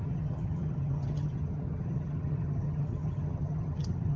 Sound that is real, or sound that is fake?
fake